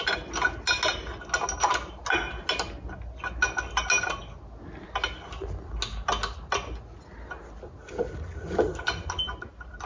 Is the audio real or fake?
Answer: real